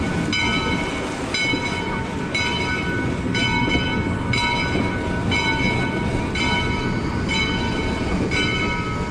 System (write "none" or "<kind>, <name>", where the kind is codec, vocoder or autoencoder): none